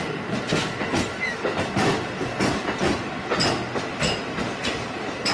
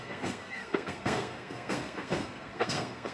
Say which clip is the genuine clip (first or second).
first